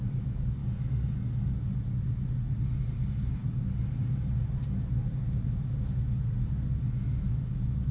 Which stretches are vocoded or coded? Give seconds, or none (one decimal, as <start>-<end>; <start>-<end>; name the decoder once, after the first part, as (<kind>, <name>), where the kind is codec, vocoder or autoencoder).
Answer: 0.6-1.5 (codec, DAC)